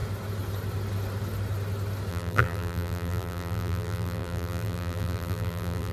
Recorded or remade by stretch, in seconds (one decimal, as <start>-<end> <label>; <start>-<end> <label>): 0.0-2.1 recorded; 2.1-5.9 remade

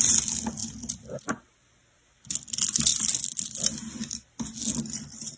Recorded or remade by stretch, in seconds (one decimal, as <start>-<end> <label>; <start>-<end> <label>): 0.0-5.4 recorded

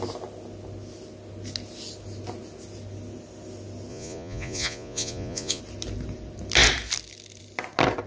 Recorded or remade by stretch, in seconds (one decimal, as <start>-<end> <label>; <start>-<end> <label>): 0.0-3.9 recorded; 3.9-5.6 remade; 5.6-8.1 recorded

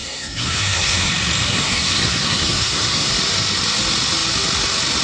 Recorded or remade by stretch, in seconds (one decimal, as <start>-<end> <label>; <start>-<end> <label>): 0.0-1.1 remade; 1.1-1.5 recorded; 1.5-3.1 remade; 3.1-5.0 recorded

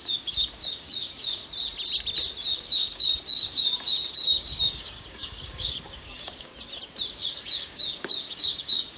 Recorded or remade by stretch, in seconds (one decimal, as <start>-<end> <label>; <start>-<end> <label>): 0.0-1.4 remade; 1.4-2.4 recorded; 2.4-6.5 remade; 6.5-7.1 recorded; 7.1-9.0 remade

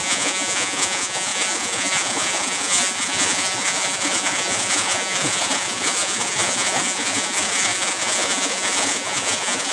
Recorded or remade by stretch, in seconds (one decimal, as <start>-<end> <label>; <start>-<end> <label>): 0.0-9.7 remade